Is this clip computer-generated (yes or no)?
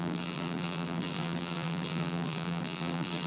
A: yes